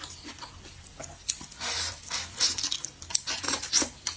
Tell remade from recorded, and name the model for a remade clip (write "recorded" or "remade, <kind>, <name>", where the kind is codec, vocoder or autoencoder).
recorded